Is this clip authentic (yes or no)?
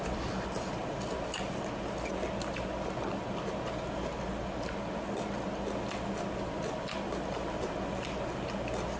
yes